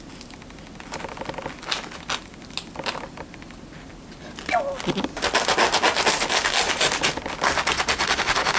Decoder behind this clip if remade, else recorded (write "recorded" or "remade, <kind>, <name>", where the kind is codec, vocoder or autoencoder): recorded